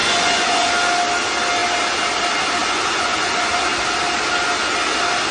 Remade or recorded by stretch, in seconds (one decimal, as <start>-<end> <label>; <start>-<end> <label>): 0.0-0.7 remade; 0.7-2.6 recorded; 2.6-3.7 remade; 3.7-5.3 recorded